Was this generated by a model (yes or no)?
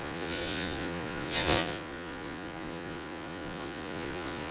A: yes